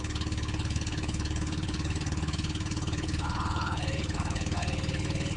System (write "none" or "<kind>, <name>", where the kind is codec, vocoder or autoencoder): codec, HILCodec